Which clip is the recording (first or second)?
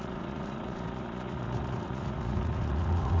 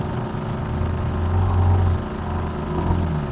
second